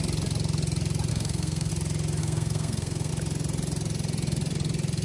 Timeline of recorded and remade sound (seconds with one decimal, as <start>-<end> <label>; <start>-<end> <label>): 0.0-1.1 recorded; 1.1-1.7 remade; 1.7-2.2 recorded; 2.2-3.1 remade; 3.1-5.0 recorded